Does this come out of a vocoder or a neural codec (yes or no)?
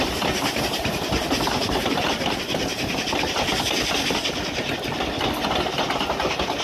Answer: no